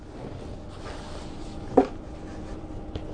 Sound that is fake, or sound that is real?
real